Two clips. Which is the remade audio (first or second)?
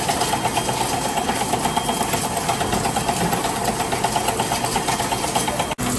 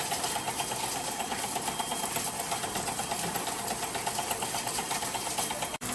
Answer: second